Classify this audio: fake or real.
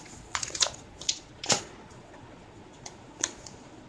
fake